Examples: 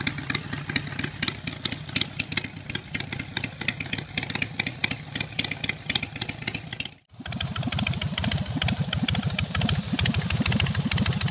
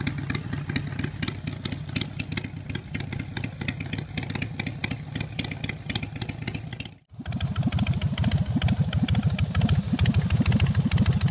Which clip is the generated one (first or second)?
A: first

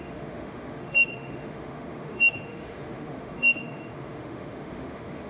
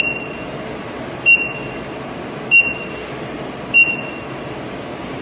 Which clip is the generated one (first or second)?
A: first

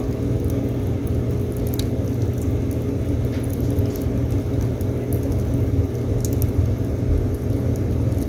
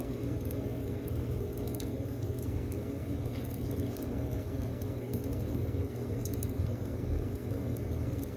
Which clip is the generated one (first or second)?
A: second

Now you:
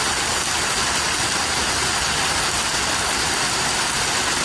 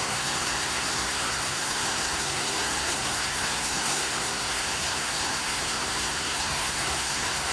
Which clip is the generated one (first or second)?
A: second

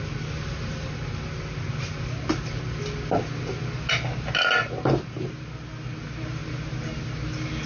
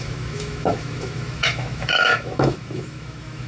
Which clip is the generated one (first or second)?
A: second